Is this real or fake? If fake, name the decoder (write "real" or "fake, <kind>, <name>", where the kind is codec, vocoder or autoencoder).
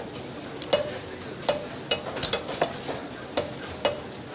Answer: real